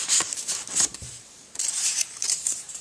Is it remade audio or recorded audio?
remade